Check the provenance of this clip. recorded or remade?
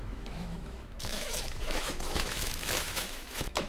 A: remade